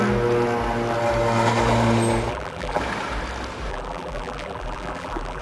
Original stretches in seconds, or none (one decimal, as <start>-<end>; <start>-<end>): 0.0-2.3; 2.8-3.7